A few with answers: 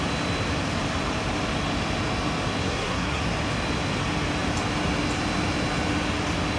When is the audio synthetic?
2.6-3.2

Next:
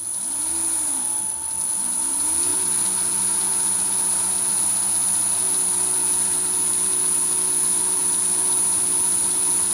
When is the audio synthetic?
none

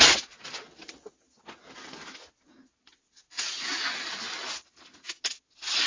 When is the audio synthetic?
none

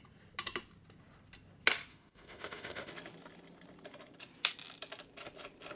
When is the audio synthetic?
1.9-2.9

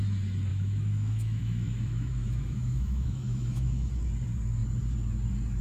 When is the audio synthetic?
0.5-3.9

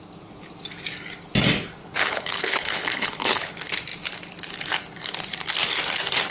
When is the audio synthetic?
1.8-3.4